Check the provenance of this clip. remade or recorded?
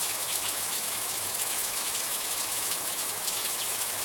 remade